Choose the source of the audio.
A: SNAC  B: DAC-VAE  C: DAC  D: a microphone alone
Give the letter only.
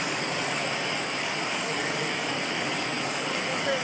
C